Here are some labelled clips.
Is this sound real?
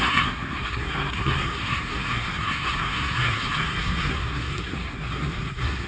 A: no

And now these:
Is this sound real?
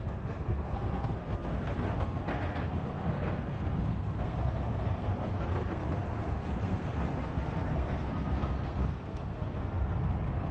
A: no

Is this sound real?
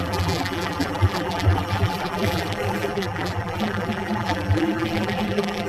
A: no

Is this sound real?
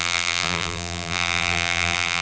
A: no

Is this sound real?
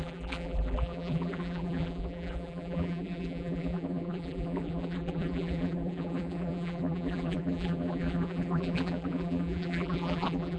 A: no